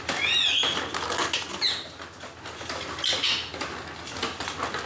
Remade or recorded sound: recorded